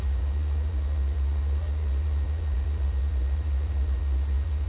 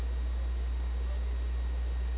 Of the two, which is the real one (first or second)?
second